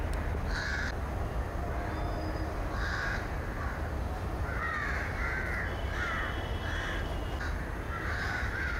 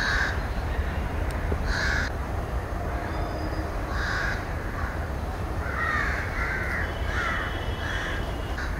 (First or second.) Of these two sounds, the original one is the first